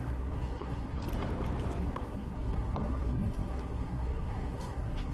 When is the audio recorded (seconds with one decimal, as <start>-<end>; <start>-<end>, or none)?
1.0-1.8